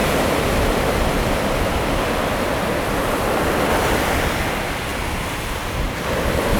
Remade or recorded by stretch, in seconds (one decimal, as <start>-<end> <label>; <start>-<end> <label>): 0.0-4.0 remade; 4.0-6.6 recorded